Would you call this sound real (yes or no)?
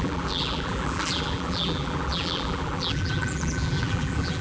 no